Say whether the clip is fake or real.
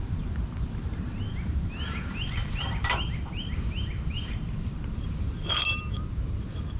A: fake